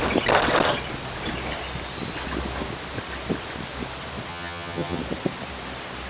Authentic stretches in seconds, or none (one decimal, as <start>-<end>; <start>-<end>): 0.0-4.3; 5.0-6.1